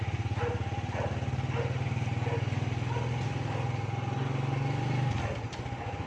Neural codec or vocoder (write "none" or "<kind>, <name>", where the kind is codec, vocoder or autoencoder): none